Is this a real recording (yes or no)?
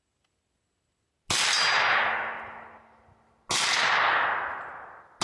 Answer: yes